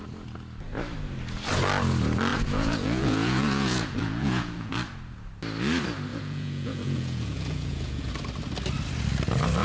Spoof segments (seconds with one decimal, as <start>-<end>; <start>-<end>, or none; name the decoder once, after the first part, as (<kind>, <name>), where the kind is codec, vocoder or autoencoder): 2.3-4.7 (vocoder, Vocos); 6.1-8.1